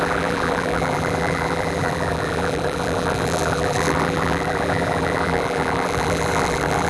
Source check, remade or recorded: remade